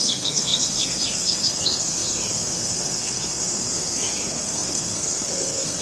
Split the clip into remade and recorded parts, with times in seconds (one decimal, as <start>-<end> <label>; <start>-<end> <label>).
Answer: 0.0-5.8 remade